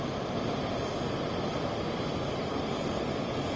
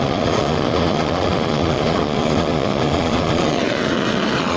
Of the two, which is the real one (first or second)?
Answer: first